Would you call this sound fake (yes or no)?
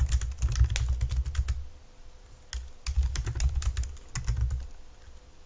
no